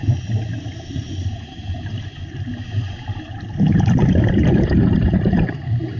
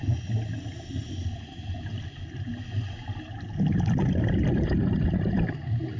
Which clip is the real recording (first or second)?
second